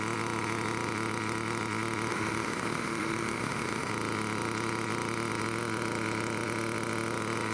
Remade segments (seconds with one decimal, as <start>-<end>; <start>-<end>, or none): 2.1-3.9